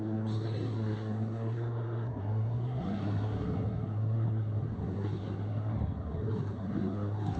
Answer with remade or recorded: remade